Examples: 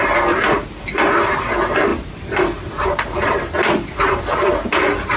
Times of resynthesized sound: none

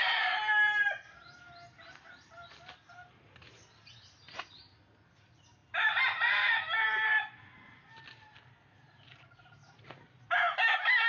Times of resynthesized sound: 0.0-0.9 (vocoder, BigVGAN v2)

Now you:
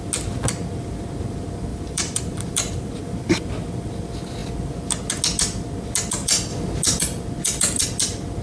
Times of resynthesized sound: 1.7-2.9 (vocoder, BigVGAN v2)

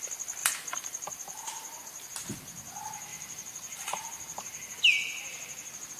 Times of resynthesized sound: 0.4-1.8 (vocoder, BigVGAN v2); 3.1-4.8

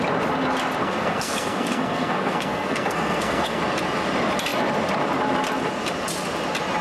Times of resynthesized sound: 0.8-3.6 (codec, SNAC)

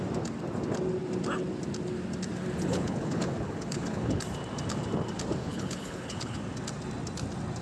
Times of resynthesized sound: 2.7-4.2 (codec, HILCodec); 5.4-6.4

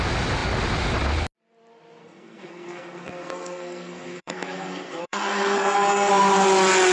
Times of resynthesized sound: 2.0-6.1 (codec, SNAC)

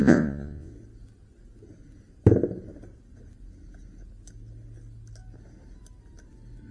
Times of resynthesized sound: 0.0-0.7 (vocoder, Vocos)